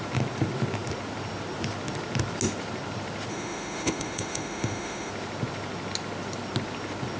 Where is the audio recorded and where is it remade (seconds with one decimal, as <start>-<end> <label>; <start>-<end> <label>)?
0.0-3.3 recorded; 3.3-5.1 remade; 5.1-7.2 recorded